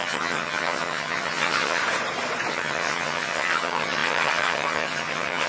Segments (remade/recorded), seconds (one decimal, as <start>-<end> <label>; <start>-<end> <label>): 0.0-1.8 remade; 1.8-2.5 recorded; 2.5-5.5 remade